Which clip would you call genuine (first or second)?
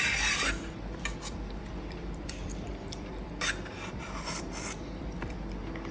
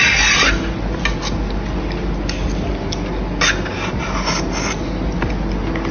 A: second